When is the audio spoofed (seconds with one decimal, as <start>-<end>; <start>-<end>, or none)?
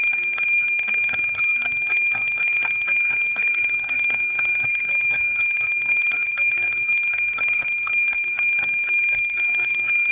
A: 0.0-10.1